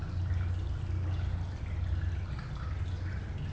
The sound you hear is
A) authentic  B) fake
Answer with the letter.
A